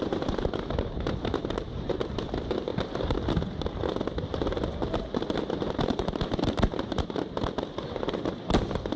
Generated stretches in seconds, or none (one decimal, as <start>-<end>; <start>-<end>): 0.0-2.7; 5.7-9.0